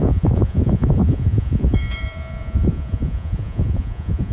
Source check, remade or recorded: remade